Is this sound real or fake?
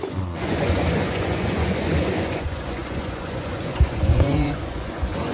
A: fake